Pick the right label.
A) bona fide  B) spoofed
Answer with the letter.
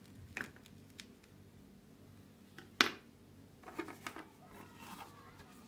A